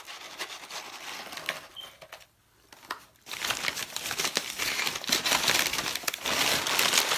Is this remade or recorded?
recorded